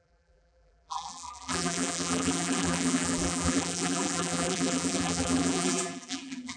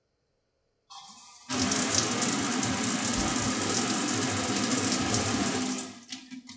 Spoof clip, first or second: first